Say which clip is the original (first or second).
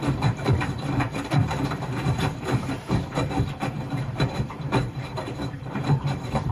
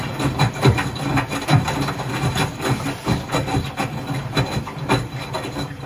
second